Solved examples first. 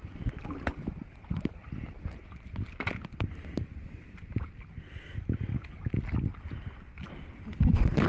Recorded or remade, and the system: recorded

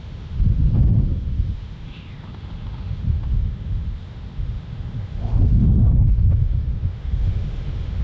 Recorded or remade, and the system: remade, autoencoder, DAC-VAE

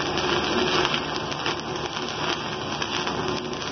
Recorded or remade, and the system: recorded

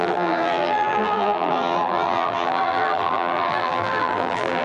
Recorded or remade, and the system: remade, vocoder, BigVGAN v2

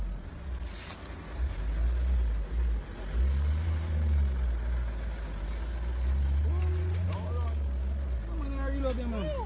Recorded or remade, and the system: recorded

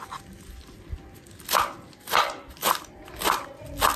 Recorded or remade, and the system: recorded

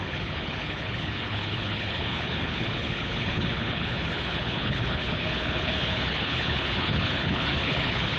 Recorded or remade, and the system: remade, codec, HILCodec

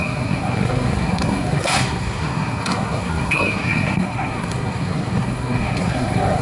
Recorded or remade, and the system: remade, codec, SNAC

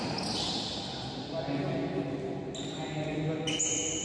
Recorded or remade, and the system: recorded